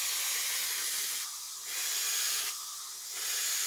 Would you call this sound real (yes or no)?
yes